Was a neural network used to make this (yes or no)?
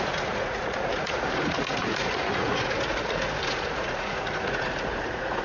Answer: yes